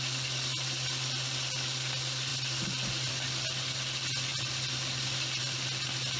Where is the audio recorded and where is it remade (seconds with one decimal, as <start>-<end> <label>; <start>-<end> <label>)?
0.0-6.2 recorded